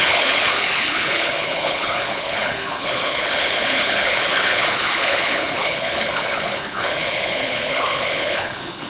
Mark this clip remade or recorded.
remade